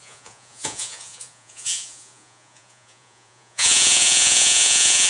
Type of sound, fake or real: fake